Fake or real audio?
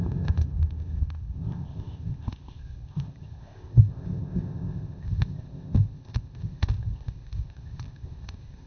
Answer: fake